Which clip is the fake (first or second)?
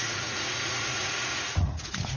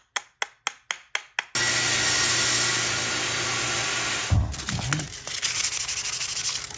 first